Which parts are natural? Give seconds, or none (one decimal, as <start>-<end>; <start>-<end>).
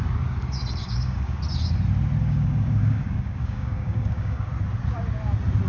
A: 0.0-0.8; 1.4-2.2; 4.5-5.7